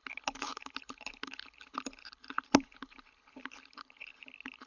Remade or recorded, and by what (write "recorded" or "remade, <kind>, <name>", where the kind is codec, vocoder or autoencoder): remade, codec, HILCodec